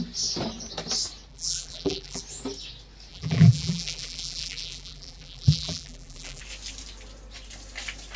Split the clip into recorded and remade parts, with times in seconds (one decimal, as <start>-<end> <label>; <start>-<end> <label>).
0.0-1.3 recorded; 1.3-2.2 remade; 2.2-3.1 recorded; 3.1-6.4 remade; 6.4-8.2 recorded

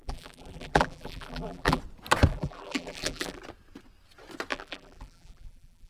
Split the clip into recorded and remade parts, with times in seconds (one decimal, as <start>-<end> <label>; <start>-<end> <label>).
0.0-1.8 remade; 1.8-2.3 recorded; 2.3-3.4 remade; 3.4-4.5 recorded; 4.5-5.9 remade

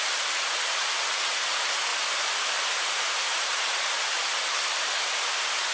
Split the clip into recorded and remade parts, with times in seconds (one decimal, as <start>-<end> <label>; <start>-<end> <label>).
0.0-1.9 recorded; 1.9-3.6 remade; 3.6-5.7 recorded

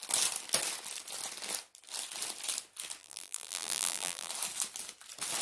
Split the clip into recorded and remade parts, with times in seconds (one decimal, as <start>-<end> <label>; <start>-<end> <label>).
0.0-3.0 recorded; 3.0-4.3 remade; 4.3-5.4 recorded

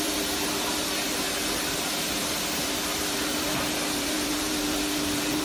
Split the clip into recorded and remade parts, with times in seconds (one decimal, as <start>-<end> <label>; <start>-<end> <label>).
0.0-5.4 remade

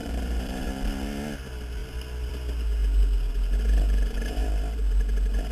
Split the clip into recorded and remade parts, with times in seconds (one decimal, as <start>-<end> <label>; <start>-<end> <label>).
0.0-0.6 remade; 0.6-5.5 recorded

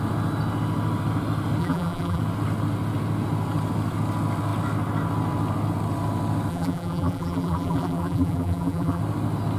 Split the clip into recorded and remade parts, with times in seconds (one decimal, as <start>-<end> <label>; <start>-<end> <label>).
0.0-1.6 recorded; 1.6-2.2 remade; 2.2-6.5 recorded; 6.5-9.0 remade; 9.0-9.6 recorded

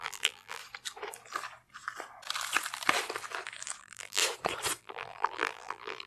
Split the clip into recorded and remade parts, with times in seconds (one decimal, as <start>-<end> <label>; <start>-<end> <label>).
0.0-0.6 remade; 0.6-3.8 recorded; 3.8-4.2 remade; 4.2-4.8 recorded; 4.8-6.1 remade